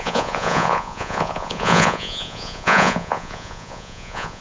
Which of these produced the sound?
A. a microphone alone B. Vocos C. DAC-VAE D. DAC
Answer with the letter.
B